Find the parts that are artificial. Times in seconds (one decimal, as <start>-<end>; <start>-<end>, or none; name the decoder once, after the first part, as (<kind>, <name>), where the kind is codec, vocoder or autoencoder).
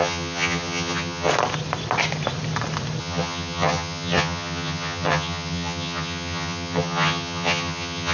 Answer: 0.0-1.3 (vocoder, HiFi-GAN); 3.0-8.1